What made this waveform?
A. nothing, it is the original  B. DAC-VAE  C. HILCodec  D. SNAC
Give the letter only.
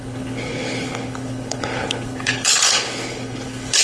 C